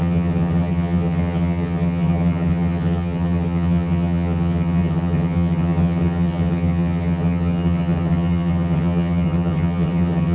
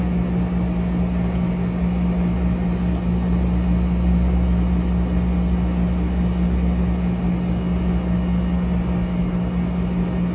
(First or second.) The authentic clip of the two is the second